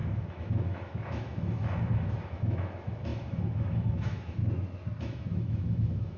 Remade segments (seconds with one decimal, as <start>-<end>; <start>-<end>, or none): 0.0-4.4; 5.0-6.2